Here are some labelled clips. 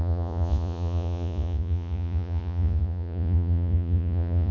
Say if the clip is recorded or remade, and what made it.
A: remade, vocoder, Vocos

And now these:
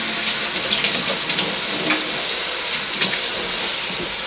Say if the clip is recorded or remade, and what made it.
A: recorded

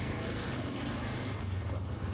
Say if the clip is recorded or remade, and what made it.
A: remade, codec, SNAC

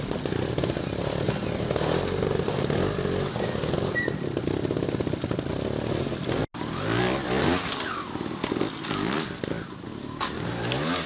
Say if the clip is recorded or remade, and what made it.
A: recorded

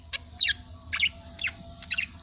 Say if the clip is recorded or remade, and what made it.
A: recorded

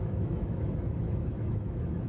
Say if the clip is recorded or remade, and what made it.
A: remade, autoencoder, DAC-VAE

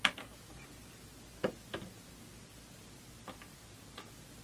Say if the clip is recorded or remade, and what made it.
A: recorded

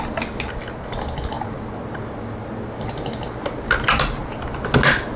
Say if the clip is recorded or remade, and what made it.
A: recorded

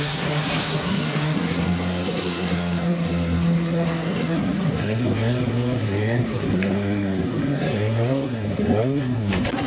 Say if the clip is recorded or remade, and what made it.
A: remade, codec, SNAC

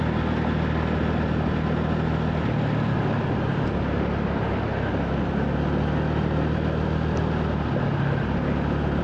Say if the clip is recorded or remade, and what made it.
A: recorded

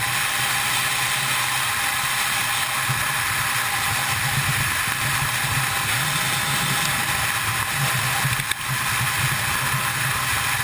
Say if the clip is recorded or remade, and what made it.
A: recorded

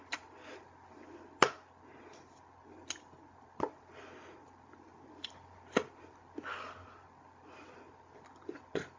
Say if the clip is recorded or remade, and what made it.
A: recorded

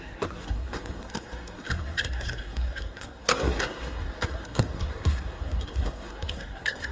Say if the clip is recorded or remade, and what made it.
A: remade, codec, SNAC